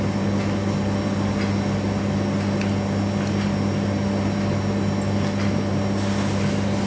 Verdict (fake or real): real